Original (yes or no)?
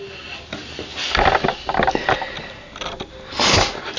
yes